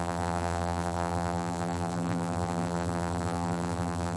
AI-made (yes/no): yes